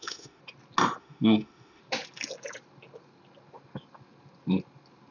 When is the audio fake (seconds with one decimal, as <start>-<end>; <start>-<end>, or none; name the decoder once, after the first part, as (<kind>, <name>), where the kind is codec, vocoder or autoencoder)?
0.0-0.4 (autoencoder, DAC-VAE); 1.0-1.8